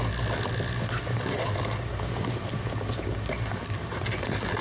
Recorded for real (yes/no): yes